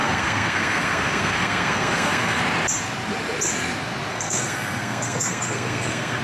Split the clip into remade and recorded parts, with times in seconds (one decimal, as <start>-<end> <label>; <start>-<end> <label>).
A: 0.0-2.4 remade; 2.4-4.1 recorded; 4.1-6.2 remade